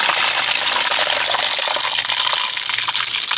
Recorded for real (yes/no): yes